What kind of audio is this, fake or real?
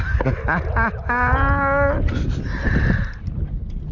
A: real